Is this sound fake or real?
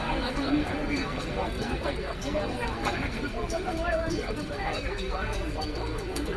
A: fake